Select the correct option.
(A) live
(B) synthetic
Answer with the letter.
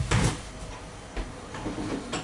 A